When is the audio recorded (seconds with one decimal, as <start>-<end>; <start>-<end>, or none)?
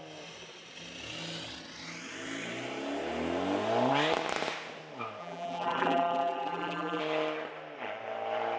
0.0-5.2; 7.0-8.6